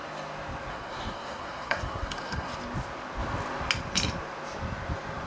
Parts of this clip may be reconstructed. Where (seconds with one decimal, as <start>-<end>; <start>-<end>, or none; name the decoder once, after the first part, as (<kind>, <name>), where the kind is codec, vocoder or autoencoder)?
0.7-2.5 (codec, SNAC)